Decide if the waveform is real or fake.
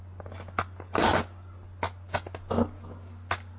real